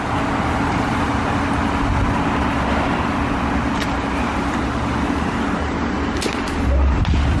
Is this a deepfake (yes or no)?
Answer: no